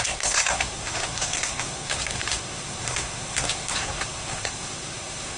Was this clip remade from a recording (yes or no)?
yes